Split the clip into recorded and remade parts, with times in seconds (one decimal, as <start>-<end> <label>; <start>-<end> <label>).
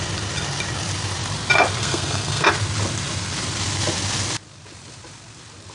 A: 0.0-1.8 recorded; 1.8-2.5 remade; 2.5-5.7 recorded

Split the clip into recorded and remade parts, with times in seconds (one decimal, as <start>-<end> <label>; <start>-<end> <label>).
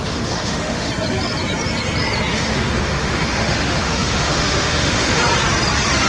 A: 0.0-0.9 remade; 0.9-2.3 recorded; 2.3-5.2 remade; 5.2-6.1 recorded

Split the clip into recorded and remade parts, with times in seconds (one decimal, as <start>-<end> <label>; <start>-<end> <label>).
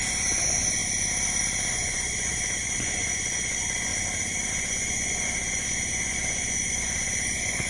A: 0.0-0.8 remade; 0.8-1.7 recorded; 1.7-3.9 remade; 3.9-4.5 recorded; 4.5-7.7 remade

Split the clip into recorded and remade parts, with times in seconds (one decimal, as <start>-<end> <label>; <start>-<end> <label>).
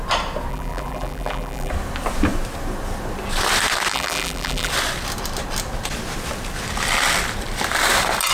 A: 0.0-0.5 recorded; 0.5-1.7 remade; 1.7-3.9 recorded; 3.9-4.7 remade; 4.7-8.3 recorded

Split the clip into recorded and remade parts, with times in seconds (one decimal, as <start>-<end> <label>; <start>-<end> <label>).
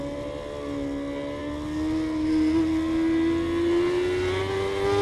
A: 0.0-5.0 recorded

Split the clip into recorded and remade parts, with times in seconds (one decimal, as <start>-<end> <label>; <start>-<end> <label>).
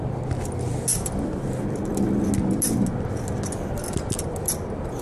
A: 0.0-0.9 recorded; 0.9-1.4 remade; 1.4-5.0 recorded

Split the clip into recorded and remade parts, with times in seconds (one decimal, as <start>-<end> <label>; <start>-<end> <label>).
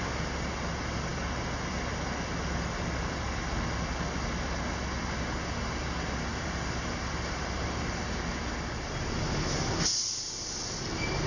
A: 0.0-6.3 recorded; 6.3-8.2 remade; 8.2-11.3 recorded